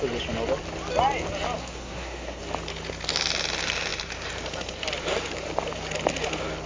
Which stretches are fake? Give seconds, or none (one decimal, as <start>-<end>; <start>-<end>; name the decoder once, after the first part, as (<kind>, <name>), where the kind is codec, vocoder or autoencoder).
1.6-2.4 (codec, SNAC)